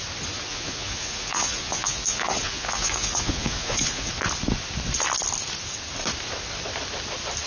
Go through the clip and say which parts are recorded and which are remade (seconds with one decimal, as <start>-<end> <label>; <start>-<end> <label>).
0.0-0.5 recorded; 0.5-4.1 remade; 4.1-7.5 recorded

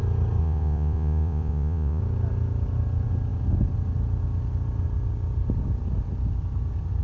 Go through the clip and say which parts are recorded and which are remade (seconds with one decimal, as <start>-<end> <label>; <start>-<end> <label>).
0.0-0.4 recorded; 0.4-2.0 remade; 2.0-7.0 recorded

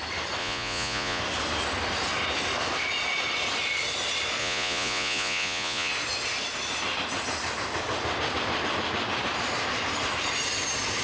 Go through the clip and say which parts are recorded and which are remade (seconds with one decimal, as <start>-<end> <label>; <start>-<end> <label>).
0.0-0.4 recorded; 0.4-1.2 remade; 1.2-4.4 recorded; 4.4-5.9 remade; 5.9-11.0 recorded

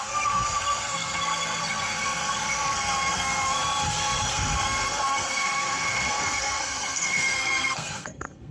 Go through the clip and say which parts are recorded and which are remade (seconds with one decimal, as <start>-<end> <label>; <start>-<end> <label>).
0.0-8.5 remade

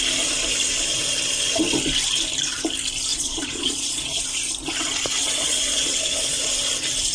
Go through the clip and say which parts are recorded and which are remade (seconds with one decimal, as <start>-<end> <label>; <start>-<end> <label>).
0.0-3.1 recorded; 3.1-4.2 remade; 4.2-5.2 recorded; 5.2-6.5 remade; 6.5-7.1 recorded

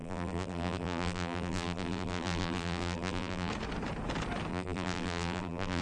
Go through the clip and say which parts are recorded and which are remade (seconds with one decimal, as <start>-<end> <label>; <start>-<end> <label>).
0.0-3.5 remade; 3.5-4.5 recorded; 4.5-5.8 remade

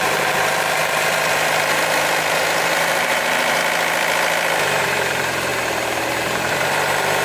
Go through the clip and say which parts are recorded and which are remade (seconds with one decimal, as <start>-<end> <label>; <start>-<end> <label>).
0.0-3.6 remade; 3.6-4.6 recorded; 4.6-7.2 remade

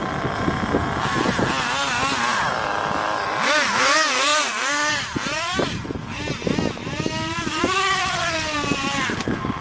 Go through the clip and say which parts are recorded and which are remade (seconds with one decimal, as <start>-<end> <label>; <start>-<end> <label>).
0.0-9.6 recorded